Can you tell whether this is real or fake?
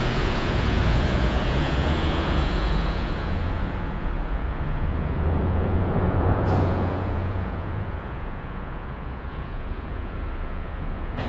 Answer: fake